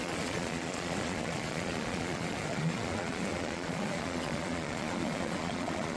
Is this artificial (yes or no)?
yes